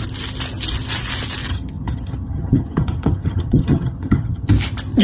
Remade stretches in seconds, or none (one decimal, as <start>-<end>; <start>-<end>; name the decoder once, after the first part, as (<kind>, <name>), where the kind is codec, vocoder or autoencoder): 1.5-4.5 (vocoder, HiFi-GAN)